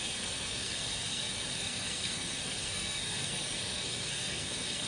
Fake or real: fake